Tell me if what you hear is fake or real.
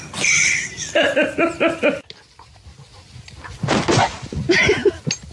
real